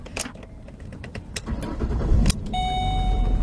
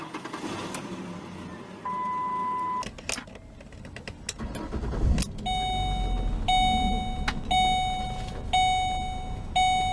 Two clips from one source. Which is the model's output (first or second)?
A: first